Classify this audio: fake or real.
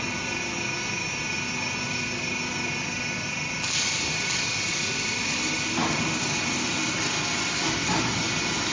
real